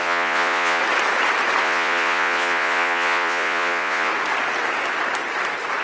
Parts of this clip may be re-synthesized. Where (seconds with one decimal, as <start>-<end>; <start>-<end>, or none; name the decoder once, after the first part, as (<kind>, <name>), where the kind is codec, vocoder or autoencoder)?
0.0-0.8 (vocoder, Vocos); 1.6-4.1